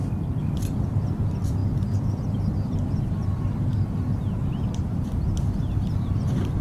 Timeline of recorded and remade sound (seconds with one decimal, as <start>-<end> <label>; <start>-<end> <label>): 0.0-6.6 recorded